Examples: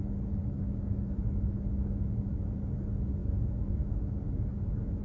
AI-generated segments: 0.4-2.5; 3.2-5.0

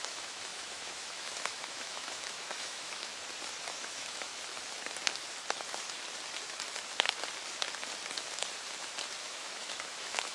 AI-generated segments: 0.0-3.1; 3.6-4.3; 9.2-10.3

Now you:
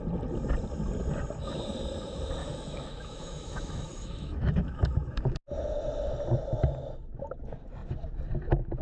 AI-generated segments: 2.4-5.2